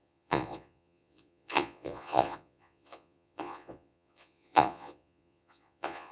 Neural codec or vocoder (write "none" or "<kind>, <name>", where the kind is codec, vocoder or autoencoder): vocoder, Vocos